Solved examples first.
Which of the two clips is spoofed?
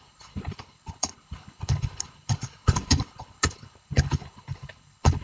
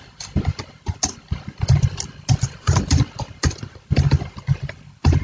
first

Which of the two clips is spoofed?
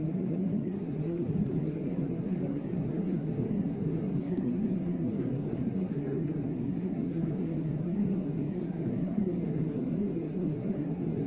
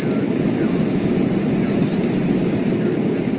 first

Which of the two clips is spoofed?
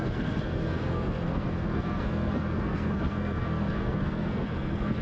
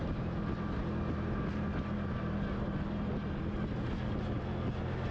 first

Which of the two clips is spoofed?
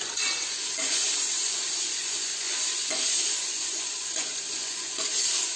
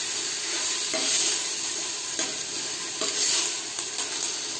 first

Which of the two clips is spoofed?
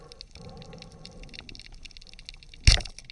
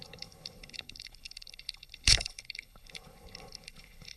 second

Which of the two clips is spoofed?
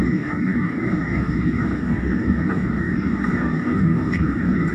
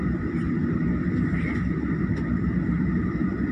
first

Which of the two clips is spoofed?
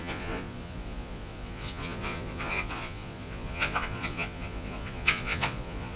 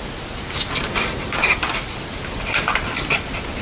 first